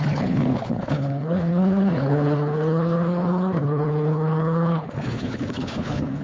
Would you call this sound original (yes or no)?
no